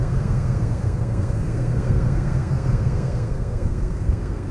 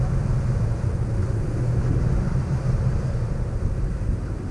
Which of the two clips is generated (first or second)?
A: first